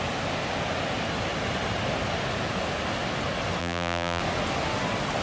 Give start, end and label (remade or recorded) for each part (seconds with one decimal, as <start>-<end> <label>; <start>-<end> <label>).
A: 0.0-3.6 recorded; 3.6-4.2 remade; 4.2-5.2 recorded

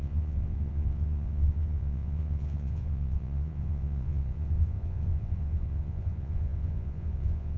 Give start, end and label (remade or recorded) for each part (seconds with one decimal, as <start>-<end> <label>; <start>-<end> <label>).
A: 0.0-7.6 remade

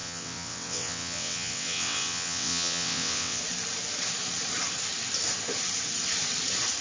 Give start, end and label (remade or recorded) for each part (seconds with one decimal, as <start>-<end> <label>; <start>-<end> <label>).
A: 0.0-3.4 remade; 3.4-6.8 recorded